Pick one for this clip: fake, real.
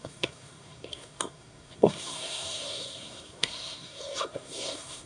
fake